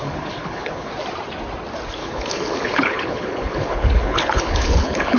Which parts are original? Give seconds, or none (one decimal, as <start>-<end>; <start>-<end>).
0.9-2.0